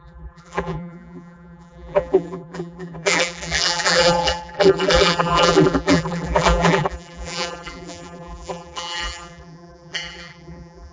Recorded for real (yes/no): no